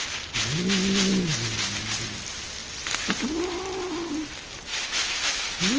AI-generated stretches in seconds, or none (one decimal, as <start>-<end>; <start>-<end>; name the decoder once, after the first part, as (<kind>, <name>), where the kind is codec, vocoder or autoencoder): 4.7-5.8 (autoencoder, DAC-VAE)